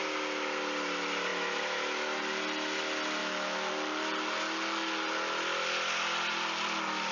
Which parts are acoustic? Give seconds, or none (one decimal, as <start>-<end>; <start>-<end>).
0.0-1.3; 2.2-3.2; 3.7-7.1